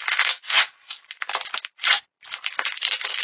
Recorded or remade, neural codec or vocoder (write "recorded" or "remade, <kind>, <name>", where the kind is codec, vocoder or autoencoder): recorded